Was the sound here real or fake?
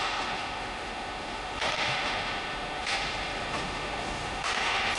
fake